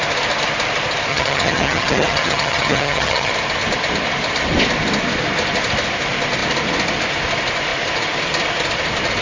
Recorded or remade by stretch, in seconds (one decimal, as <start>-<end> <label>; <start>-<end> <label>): 0.0-1.1 recorded; 1.1-3.3 remade; 3.3-9.2 recorded